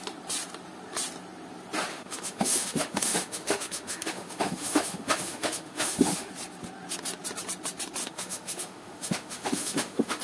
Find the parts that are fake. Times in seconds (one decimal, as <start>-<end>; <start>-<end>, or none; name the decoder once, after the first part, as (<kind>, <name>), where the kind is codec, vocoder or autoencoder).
1.9-6.3 (autoencoder, DAC-VAE); 8.0-10.2